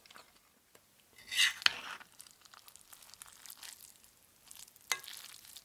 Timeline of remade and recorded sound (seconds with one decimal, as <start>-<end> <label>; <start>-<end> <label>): 0.0-1.7 recorded; 1.7-2.6 remade; 2.6-5.6 recorded